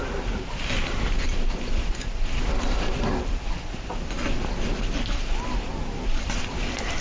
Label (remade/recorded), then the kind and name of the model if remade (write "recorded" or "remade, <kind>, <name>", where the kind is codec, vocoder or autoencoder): recorded